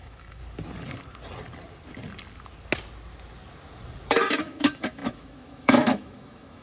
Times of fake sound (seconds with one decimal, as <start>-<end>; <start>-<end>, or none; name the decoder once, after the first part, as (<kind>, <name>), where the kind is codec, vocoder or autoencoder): 0.0-0.4 (autoencoder, DAC-VAE); 4.1-6.6